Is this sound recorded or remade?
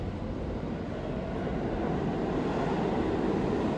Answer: recorded